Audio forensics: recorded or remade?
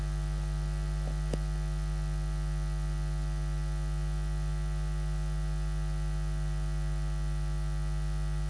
recorded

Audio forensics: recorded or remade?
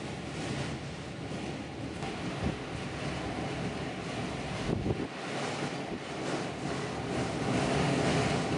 recorded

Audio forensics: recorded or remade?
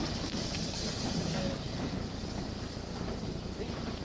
recorded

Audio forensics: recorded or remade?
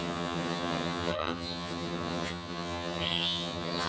remade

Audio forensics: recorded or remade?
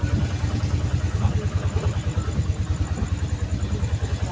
recorded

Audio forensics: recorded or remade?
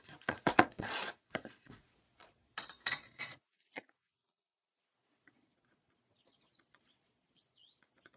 remade